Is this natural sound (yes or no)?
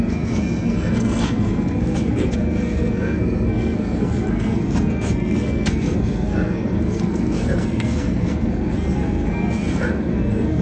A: no